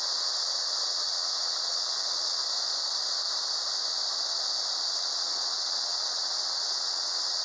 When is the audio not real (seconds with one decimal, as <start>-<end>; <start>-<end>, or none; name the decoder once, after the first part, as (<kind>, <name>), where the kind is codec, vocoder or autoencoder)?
0.0-2.4 (vocoder, WaveNeXt); 4.9-7.4